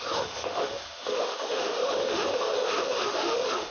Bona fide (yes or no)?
no